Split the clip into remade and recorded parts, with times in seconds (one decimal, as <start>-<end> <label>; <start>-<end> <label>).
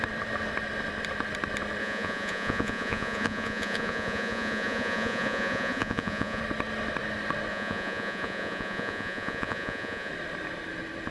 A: 0.0-1.8 recorded; 1.8-6.4 remade; 6.4-7.5 recorded; 7.5-10.1 remade; 10.1-11.1 recorded